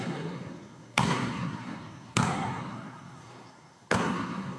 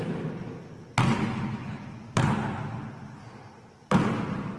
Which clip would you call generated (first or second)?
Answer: first